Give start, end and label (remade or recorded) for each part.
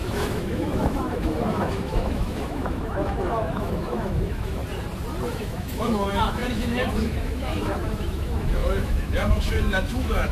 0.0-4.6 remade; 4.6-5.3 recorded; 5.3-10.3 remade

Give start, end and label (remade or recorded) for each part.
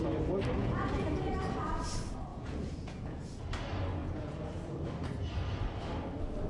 0.0-0.6 recorded; 0.6-1.1 remade; 1.1-2.3 recorded; 2.3-3.4 remade; 3.4-4.0 recorded; 4.0-4.5 remade; 4.5-6.5 recorded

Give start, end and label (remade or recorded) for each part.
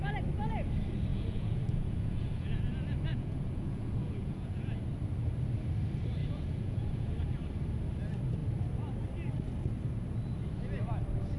0.0-1.1 recorded; 1.1-2.7 remade; 2.7-3.1 recorded; 3.1-4.8 remade; 4.8-6.2 recorded; 6.2-7.1 remade; 7.1-11.4 recorded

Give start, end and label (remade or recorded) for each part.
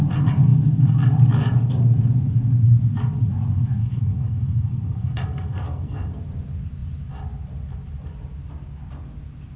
0.0-3.8 recorded; 3.8-6.2 remade; 6.2-9.6 recorded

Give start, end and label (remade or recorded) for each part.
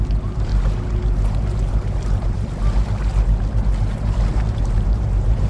0.0-0.5 remade; 0.5-1.7 recorded; 1.7-2.6 remade; 2.6-4.3 recorded; 4.3-5.5 remade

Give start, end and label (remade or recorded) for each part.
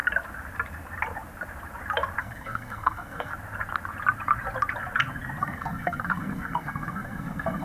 0.0-2.2 recorded; 2.2-3.3 remade; 3.3-5.4 recorded; 5.4-7.6 remade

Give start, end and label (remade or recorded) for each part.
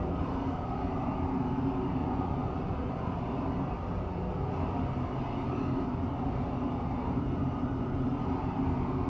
0.0-2.0 recorded; 2.0-3.2 remade; 3.2-9.1 recorded